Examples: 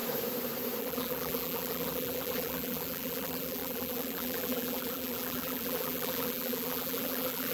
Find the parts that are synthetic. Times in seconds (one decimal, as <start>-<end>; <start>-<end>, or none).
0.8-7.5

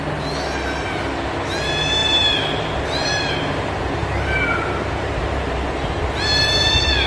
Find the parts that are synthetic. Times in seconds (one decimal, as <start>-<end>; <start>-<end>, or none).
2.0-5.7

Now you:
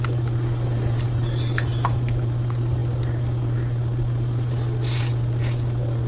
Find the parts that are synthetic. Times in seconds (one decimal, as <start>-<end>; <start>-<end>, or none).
none